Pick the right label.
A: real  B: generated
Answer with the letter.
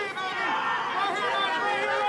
A